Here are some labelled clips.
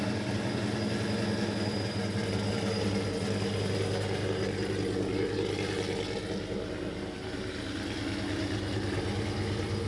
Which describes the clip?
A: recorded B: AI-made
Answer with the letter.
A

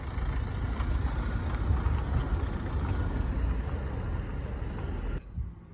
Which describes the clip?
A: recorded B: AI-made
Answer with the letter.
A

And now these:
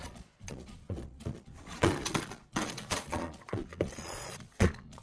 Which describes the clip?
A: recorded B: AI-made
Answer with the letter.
B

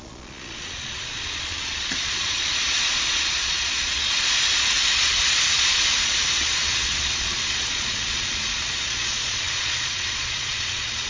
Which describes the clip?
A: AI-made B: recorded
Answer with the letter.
A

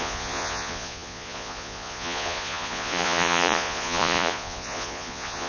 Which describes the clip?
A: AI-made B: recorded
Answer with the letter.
A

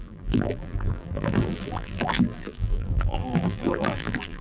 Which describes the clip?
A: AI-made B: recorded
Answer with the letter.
A